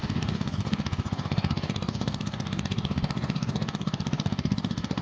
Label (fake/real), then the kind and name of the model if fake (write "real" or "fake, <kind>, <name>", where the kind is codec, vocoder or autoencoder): fake, codec, DAC